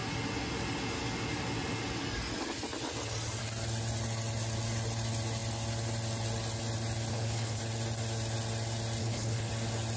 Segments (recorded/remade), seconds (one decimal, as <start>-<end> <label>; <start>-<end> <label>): 0.0-7.1 recorded; 7.1-7.6 remade; 7.6-9.0 recorded; 9.0-9.5 remade; 9.5-10.0 recorded